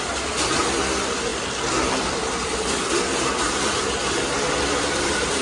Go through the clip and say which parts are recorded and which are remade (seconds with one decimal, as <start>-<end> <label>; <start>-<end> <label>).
0.0-5.4 recorded